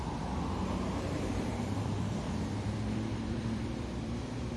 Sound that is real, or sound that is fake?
fake